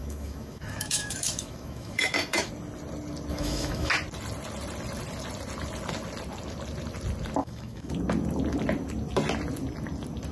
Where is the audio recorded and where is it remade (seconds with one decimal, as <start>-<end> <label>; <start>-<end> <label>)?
0.0-2.5 remade; 2.5-3.3 recorded; 3.3-3.9 remade; 3.9-7.4 recorded; 7.4-7.9 remade; 7.9-10.3 recorded